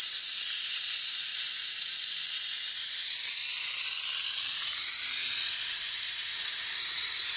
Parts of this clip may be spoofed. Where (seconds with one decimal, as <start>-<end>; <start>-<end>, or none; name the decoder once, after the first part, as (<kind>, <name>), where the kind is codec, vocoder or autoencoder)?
0.0-1.3 (vocoder, BigVGAN v2); 3.0-7.4